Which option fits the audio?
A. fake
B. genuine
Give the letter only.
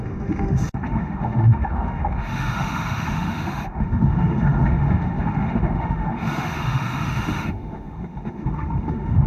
A